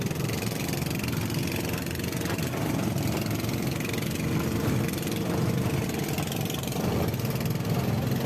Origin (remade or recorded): recorded